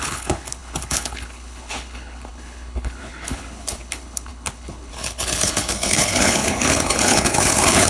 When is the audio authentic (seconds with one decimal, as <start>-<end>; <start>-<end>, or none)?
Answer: none

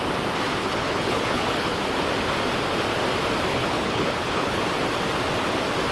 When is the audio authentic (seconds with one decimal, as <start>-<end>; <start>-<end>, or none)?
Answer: 0.0-0.6; 1.8-3.5; 4.6-5.9

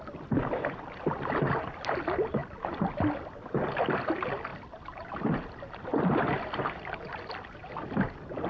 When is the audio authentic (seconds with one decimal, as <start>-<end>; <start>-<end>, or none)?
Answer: 0.0-8.5

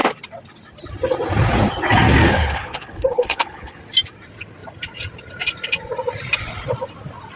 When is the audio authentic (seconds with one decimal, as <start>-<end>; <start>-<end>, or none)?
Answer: 0.0-2.4; 3.8-7.4

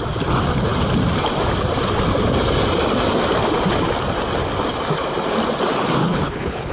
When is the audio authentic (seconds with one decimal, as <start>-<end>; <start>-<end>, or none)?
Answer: 0.0-6.0